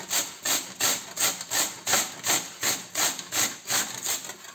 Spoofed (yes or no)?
no